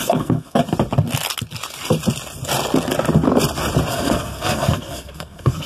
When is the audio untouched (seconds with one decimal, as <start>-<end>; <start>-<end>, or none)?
0.6-3.9